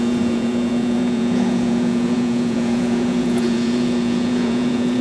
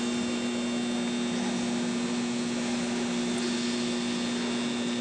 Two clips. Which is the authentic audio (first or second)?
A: second